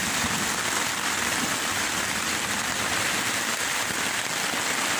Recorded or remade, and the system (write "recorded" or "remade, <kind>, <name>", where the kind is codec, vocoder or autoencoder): recorded